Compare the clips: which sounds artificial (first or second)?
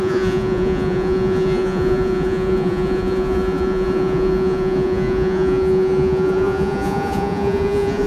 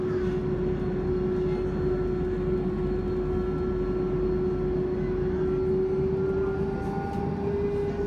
first